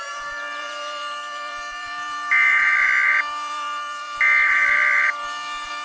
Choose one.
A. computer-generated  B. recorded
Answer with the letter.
A